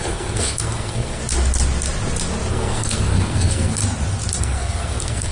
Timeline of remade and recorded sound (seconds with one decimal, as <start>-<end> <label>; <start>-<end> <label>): 0.0-1.2 remade; 1.2-2.5 recorded; 2.5-3.8 remade; 3.8-4.4 recorded; 4.4-5.3 remade